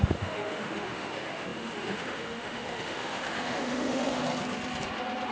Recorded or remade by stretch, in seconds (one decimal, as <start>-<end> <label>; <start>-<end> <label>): 0.0-4.2 remade; 4.2-5.3 recorded